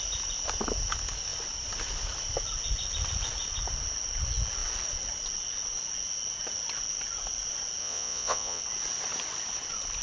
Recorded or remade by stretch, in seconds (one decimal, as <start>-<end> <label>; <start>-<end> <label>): 0.0-7.8 recorded; 7.8-8.6 remade; 8.6-10.0 recorded